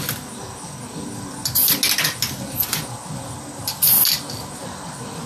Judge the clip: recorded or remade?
recorded